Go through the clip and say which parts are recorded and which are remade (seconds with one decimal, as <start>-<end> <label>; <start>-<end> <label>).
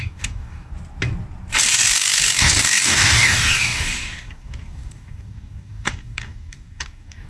0.0-0.7 remade; 0.7-1.7 recorded; 1.7-7.3 remade